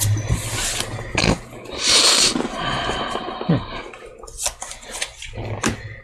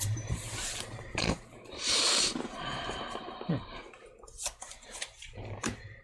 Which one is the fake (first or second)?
second